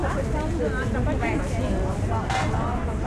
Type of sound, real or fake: real